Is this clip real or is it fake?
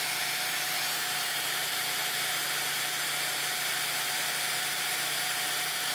fake